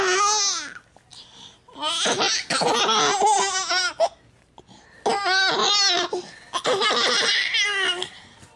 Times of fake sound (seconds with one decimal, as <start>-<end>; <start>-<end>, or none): none